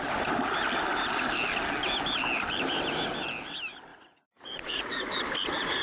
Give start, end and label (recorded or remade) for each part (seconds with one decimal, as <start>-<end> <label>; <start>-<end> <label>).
0.0-3.9 recorded; 3.9-5.1 remade; 5.1-5.8 recorded